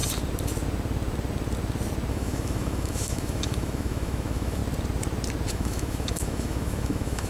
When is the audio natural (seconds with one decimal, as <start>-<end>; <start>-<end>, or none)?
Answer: 0.0-2.1; 4.6-5.5